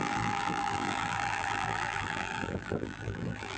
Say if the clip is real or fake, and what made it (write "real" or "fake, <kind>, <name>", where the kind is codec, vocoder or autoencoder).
fake, vocoder, BigVGAN v2